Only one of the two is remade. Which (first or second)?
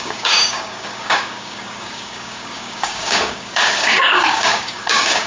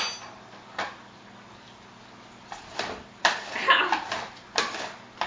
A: first